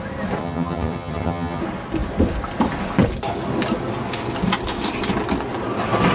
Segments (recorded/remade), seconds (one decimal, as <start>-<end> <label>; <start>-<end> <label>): 0.0-0.4 recorded; 0.4-1.6 remade; 1.6-6.1 recorded